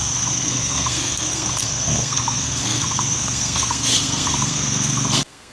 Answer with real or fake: fake